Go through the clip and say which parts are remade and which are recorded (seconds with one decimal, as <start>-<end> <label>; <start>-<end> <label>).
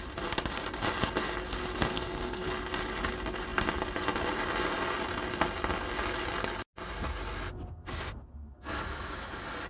0.0-1.9 recorded; 1.9-2.5 remade; 2.5-9.7 recorded